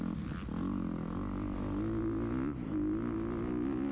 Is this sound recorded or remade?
recorded